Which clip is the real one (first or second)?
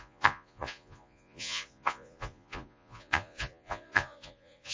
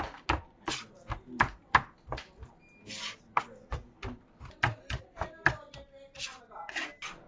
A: second